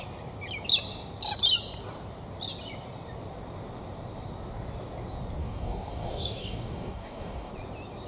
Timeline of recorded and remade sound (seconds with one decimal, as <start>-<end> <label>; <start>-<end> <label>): 0.0-5.4 recorded; 5.4-7.5 remade; 7.5-8.1 recorded